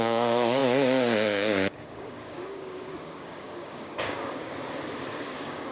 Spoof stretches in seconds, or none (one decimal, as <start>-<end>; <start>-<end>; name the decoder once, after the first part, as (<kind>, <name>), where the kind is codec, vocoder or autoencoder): 0.0-4.5 (codec, DAC); 5.1-5.7